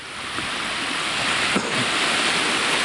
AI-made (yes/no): no